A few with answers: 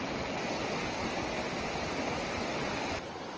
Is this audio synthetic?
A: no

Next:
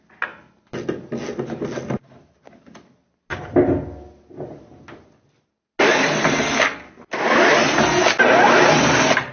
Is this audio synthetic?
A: no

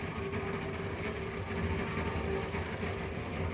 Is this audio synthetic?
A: no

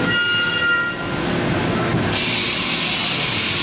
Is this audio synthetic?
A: no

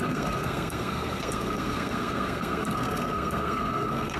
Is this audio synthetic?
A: yes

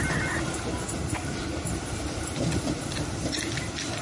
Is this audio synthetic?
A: no